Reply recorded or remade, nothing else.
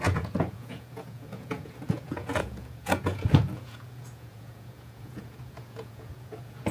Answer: remade